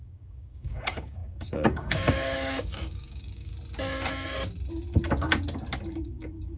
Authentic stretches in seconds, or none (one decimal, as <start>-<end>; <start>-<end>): 3.5-5.9